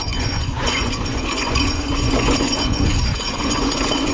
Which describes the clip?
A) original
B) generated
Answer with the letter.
B